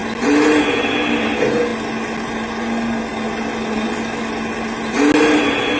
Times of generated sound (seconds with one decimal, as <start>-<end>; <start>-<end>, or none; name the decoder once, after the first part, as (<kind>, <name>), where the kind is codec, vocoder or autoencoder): none